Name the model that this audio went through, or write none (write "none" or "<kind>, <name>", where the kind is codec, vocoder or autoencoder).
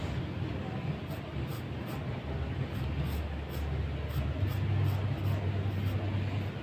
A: none